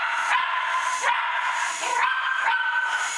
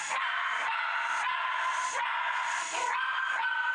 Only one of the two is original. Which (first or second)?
second